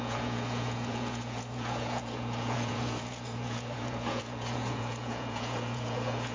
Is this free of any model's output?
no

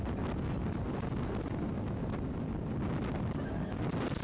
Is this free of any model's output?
yes